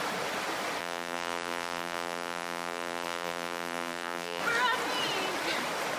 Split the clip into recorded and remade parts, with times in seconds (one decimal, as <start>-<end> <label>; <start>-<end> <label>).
0.0-0.8 recorded; 0.8-4.4 remade; 4.4-6.0 recorded